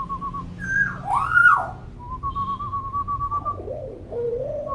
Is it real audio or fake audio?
real